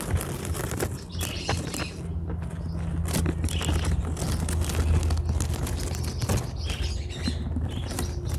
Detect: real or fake real